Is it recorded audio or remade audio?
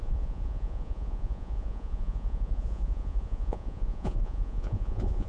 remade